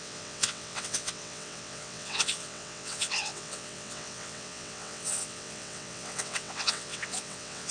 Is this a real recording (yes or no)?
no